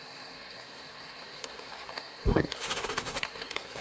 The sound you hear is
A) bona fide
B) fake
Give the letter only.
B